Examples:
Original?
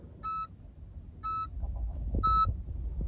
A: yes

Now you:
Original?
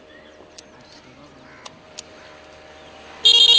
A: no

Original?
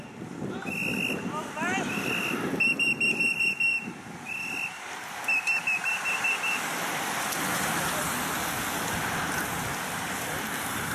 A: yes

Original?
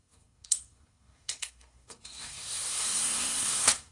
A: no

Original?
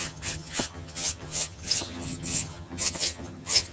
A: no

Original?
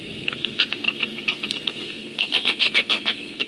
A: no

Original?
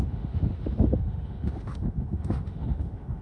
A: no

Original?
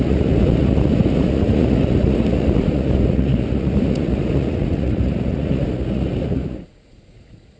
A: no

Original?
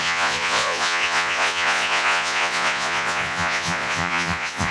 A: no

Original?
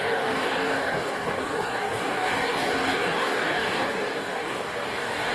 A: no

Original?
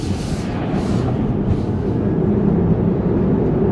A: yes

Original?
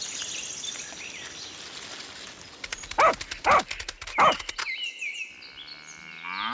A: yes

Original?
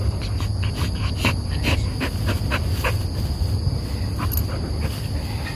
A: yes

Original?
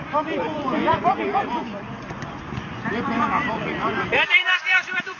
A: no